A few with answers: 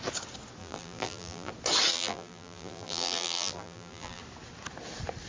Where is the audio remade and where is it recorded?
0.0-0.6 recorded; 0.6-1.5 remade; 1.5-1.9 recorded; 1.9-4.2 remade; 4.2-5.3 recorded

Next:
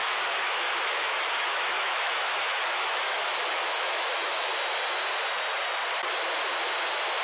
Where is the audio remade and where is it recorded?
0.0-4.5 remade; 4.5-7.2 recorded

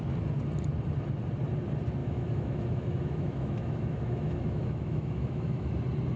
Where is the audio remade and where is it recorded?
0.0-2.0 recorded; 2.0-5.7 remade; 5.7-6.2 recorded